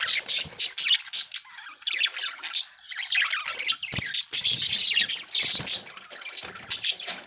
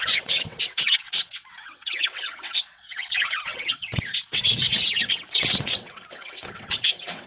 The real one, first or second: first